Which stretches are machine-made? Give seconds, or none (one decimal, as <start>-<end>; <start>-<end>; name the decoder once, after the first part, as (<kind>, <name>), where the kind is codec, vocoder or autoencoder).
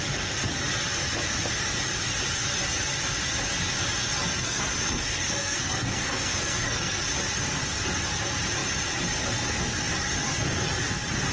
4.4-7.0 (codec, SNAC)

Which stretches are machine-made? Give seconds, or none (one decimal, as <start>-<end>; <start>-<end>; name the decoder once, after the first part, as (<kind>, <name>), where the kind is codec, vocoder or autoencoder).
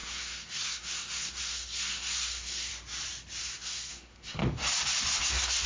0.0-2.7 (codec, SNAC); 3.4-4.4; 5.3-5.7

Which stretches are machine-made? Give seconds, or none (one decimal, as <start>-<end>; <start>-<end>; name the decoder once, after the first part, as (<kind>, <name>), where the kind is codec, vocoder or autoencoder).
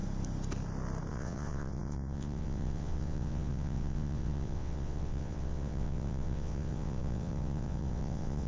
1.1-8.5 (vocoder, WaveNeXt)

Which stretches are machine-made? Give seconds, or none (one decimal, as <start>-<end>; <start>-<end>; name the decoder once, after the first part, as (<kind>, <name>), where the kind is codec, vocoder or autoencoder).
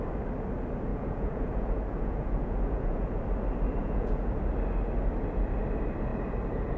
0.9-3.2 (vocoder, Vocos); 3.8-4.3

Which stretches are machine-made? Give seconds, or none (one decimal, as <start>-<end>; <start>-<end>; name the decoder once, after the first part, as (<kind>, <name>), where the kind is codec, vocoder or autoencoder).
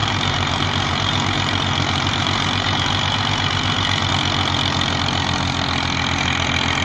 0.0-4.1 (vocoder, BigVGAN v2)